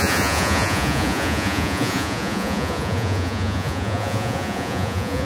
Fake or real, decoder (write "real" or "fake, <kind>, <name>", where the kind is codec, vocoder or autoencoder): fake, vocoder, Vocos